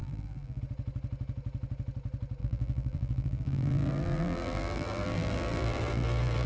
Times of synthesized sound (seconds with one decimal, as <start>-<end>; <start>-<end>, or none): 0.0-0.6; 2.4-6.5